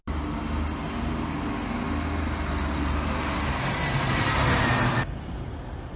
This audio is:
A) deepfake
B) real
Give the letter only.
B